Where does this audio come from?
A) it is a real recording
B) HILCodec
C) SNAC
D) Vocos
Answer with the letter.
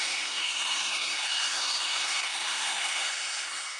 C